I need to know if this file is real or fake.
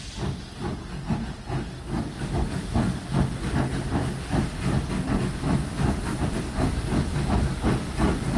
real